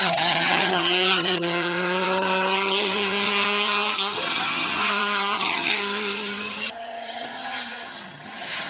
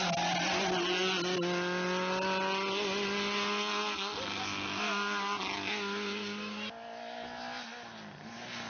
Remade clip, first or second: first